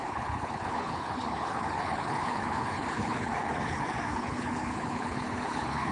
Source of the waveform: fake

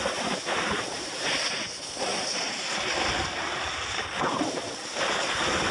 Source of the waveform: real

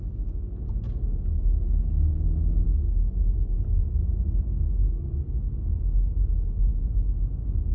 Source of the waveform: real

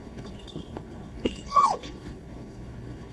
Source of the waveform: fake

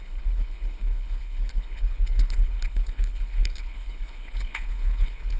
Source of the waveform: fake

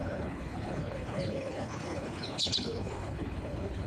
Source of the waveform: fake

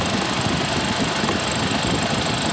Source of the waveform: real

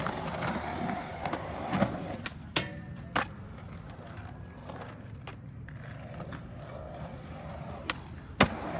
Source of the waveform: real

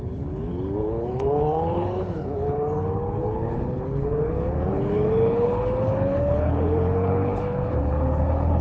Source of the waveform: fake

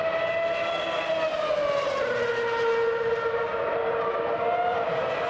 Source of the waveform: real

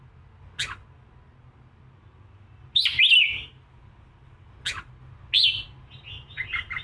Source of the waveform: real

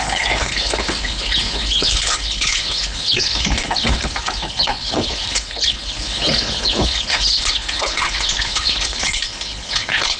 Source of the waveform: fake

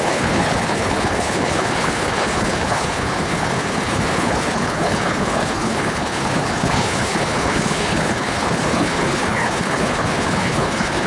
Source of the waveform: fake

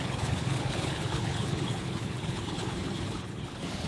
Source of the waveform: fake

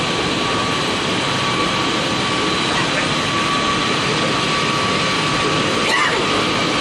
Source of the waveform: real